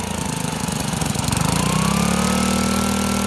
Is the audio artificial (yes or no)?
no